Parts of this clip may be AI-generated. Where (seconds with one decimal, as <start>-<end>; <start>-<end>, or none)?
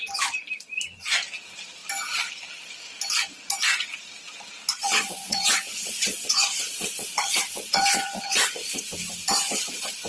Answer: 4.7-8.9